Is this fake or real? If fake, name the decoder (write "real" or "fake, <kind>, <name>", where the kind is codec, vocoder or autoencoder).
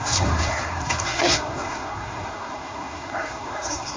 fake, codec, SNAC